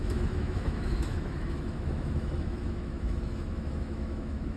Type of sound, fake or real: fake